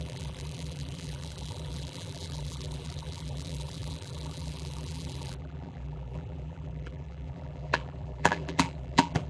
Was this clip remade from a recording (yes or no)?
yes